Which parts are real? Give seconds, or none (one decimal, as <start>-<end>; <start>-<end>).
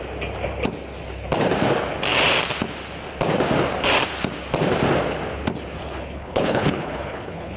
0.0-5.8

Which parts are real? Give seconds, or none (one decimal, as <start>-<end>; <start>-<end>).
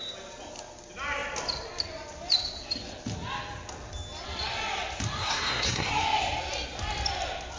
0.0-5.2; 5.9-7.6